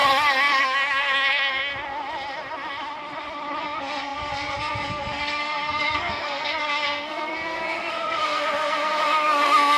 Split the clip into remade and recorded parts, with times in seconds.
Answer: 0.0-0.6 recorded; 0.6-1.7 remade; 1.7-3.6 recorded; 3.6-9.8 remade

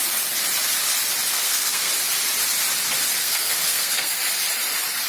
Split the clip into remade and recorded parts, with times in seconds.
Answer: 0.0-1.3 recorded; 1.3-1.9 remade; 1.9-3.2 recorded; 3.2-4.2 remade; 4.2-5.1 recorded

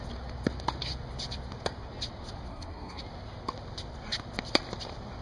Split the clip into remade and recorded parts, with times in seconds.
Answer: 0.0-2.5 recorded; 2.5-3.0 remade; 3.0-5.2 recorded

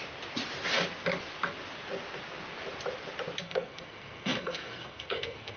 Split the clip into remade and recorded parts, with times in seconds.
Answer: 0.0-3.4 recorded; 3.4-5.6 remade

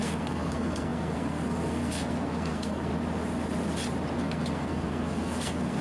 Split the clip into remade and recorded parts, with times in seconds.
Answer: 0.0-2.9 remade; 2.9-4.2 recorded; 4.2-5.8 remade

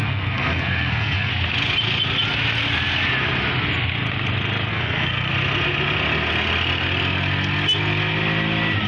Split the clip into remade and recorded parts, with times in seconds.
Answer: 0.0-1.3 remade; 1.3-4.7 recorded; 4.7-5.3 remade; 5.3-8.9 recorded

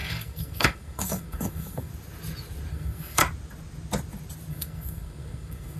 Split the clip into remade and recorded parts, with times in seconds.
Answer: 0.0-1.9 remade; 1.9-2.7 recorded; 2.7-3.2 remade; 3.2-4.5 recorded; 4.5-5.8 remade